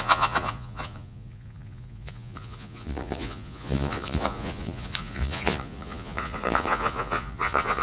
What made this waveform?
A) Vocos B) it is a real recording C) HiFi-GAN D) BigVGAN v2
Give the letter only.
A